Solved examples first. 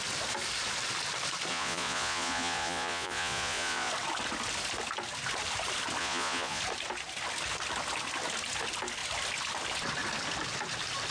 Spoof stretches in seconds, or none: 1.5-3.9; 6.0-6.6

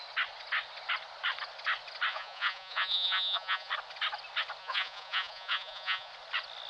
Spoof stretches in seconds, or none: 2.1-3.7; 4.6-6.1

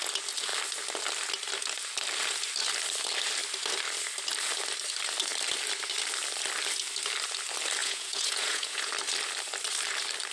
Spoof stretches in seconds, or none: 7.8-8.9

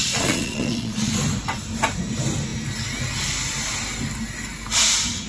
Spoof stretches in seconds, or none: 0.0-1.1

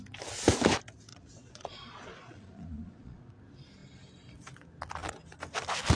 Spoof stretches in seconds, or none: 1.1-3.3

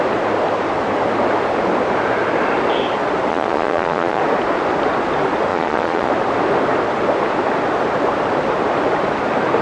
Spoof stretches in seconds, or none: 3.3-4.2; 5.5-6.1

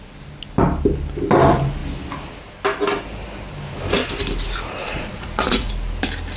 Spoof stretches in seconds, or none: 4.8-5.7

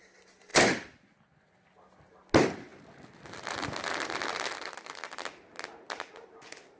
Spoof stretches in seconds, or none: none